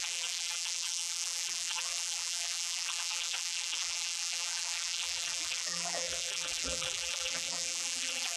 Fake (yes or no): yes